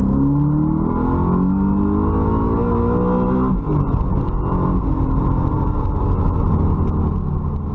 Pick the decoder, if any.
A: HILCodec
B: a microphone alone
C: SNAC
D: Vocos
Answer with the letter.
B